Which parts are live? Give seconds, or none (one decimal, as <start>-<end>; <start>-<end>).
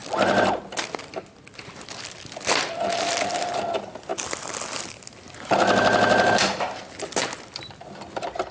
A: 0.0-8.5